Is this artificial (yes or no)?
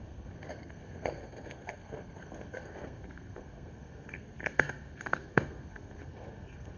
yes